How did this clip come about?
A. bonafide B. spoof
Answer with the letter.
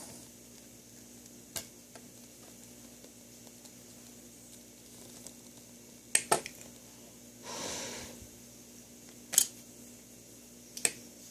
A